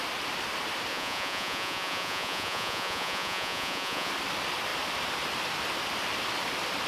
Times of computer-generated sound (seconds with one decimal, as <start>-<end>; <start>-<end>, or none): 0.9-4.1